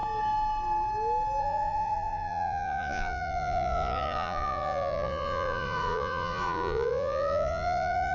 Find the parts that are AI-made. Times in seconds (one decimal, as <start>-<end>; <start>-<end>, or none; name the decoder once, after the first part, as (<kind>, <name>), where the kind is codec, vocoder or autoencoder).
1.4-8.1 (vocoder, Vocos)